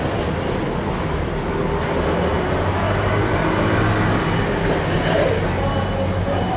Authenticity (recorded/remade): recorded